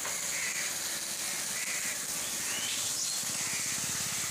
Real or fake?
real